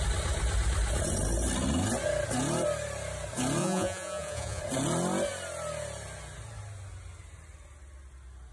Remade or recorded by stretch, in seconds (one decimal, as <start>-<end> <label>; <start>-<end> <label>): 0.0-3.6 recorded; 3.6-4.6 remade; 4.6-8.5 recorded